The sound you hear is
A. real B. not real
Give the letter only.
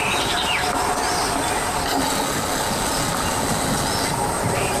A